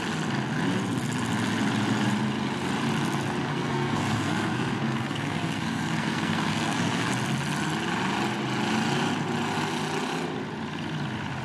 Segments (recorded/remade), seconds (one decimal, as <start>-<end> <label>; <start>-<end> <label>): 0.0-3.5 recorded; 3.5-7.1 remade; 7.1-11.4 recorded